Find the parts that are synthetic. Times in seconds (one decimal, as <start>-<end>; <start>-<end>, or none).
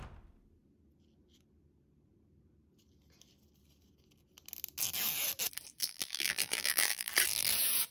5.8-7.1